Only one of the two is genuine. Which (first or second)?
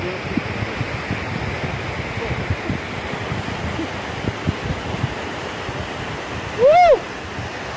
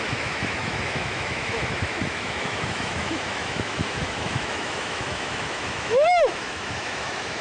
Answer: first